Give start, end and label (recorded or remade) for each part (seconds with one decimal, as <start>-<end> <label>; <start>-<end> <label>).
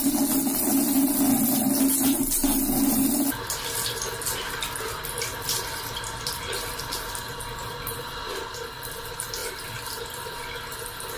0.0-11.2 recorded